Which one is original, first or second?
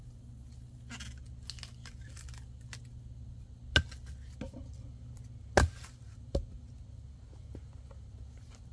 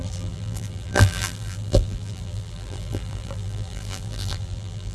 first